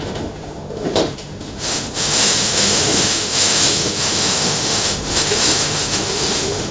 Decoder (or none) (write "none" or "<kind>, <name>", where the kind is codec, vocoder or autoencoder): autoencoder, DAC-VAE